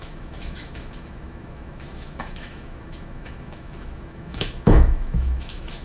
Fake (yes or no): yes